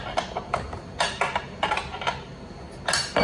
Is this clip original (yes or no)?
yes